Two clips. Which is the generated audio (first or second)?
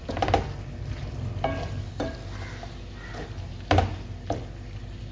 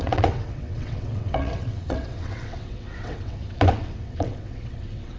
second